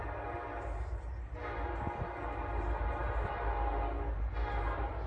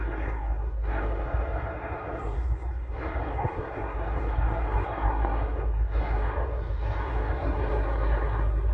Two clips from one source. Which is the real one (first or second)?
first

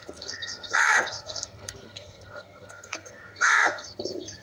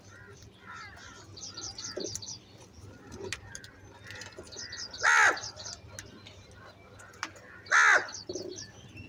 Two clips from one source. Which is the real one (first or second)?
second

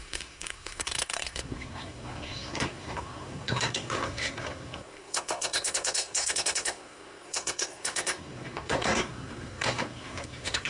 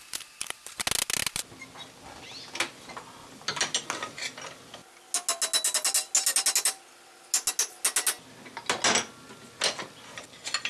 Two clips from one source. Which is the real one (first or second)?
second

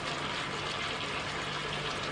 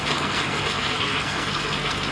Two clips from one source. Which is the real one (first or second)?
first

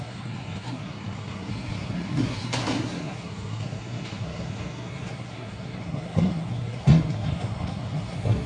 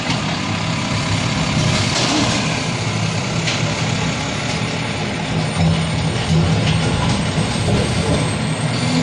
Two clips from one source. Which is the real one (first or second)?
second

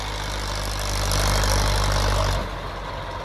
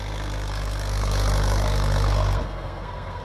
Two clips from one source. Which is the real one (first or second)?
first